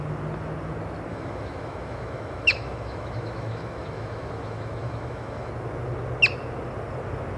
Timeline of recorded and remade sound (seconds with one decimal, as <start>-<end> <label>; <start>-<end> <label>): 0.0-1.1 recorded; 1.1-5.5 remade; 5.5-7.4 recorded